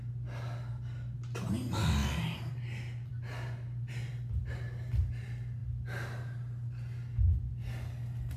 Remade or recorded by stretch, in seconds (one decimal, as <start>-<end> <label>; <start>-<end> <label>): 0.0-8.4 recorded